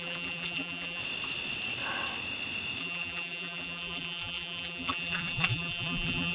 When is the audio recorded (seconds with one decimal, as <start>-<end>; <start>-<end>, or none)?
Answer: 1.0-2.8